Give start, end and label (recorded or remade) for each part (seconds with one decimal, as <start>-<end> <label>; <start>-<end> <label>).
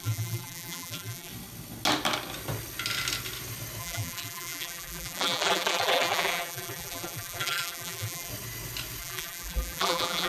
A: 0.0-1.3 remade; 1.3-3.8 recorded; 3.8-8.3 remade; 8.3-9.0 recorded; 9.0-10.3 remade